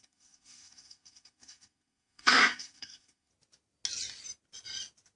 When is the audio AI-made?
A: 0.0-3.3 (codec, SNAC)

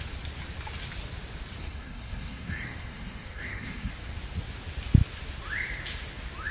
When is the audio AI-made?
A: 1.6-3.9 (codec, SNAC)

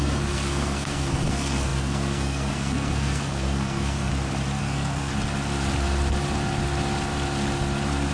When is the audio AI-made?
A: 0.0-4.1 (codec, SNAC); 4.6-5.1

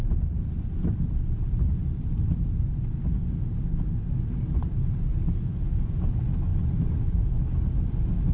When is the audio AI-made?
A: none